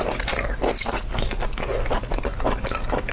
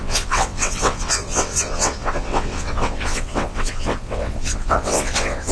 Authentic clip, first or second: first